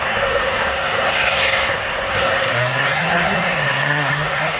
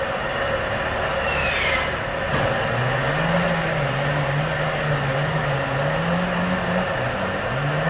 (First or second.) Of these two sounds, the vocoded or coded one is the first